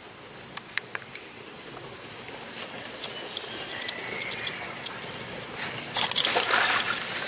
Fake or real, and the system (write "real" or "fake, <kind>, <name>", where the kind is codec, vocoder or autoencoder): real